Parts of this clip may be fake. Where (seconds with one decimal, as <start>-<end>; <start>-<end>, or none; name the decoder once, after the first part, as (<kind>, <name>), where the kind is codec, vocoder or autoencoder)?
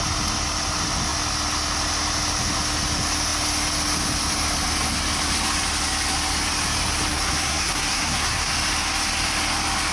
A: 7.1-8.5 (codec, SNAC)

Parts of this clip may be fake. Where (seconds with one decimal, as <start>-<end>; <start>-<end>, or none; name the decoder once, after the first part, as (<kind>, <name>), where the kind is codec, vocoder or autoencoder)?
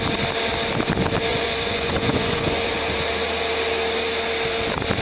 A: 1.3-2.7 (vocoder, Vocos)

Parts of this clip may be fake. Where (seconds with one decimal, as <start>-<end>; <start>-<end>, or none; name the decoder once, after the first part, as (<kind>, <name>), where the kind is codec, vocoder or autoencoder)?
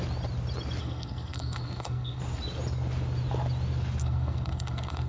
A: 0.8-2.2 (codec, SNAC); 4.0-5.1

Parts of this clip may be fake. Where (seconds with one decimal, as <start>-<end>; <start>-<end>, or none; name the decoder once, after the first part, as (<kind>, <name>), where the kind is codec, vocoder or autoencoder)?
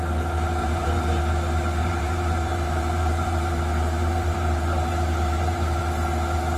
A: 0.6-1.2 (vocoder, BigVGAN v2); 1.8-5.8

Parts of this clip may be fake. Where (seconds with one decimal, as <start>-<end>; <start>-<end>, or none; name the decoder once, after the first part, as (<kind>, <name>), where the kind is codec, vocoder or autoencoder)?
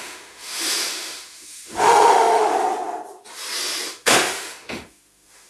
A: 0.0-2.5 (autoencoder, DAC-VAE); 3.9-5.5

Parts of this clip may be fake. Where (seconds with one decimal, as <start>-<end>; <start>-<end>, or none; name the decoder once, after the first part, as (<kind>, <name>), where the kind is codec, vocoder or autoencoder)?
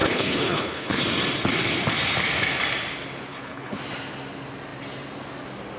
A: 0.0-1.0 (codec, HILCodec); 3.3-3.8